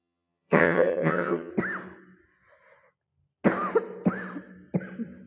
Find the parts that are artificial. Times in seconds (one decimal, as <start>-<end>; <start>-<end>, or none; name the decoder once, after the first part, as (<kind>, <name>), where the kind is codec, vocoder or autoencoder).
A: 0.0-1.5 (vocoder, HiFi-GAN)

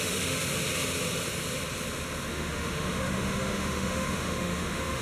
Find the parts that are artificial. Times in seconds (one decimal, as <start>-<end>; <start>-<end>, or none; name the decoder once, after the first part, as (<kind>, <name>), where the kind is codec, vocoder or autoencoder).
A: 0.0-0.5 (autoencoder, DAC-VAE); 2.3-5.0

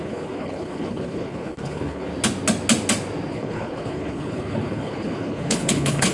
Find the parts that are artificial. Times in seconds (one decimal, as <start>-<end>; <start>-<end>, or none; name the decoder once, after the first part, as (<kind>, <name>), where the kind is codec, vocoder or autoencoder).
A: 0.0-2.1 (codec, HILCodec); 3.3-6.1

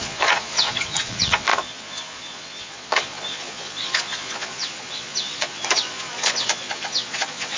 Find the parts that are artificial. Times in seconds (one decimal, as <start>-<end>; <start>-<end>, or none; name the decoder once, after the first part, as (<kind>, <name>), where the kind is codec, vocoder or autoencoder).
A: 0.0-7.6 (vocoder, Vocos)